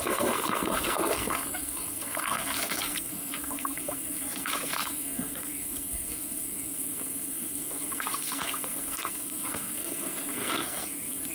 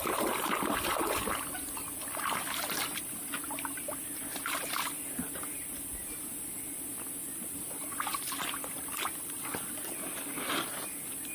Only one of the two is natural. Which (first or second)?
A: second